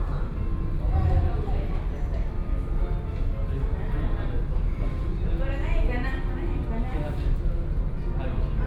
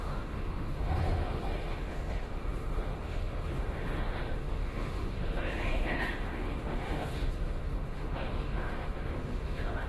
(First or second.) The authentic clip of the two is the first